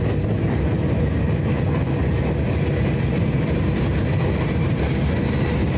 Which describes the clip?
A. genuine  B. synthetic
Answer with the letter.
A